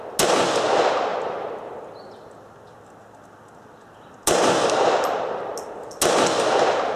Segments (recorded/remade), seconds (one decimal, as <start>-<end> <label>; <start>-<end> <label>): 0.0-7.0 recorded